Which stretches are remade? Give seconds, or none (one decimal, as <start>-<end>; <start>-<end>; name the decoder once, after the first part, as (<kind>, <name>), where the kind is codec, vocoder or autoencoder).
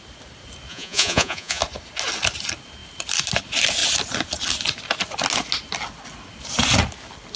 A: 0.7-1.6 (vocoder, Vocos)